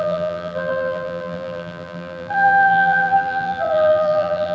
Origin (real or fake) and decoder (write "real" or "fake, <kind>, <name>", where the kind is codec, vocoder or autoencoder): fake, vocoder, BigVGAN v2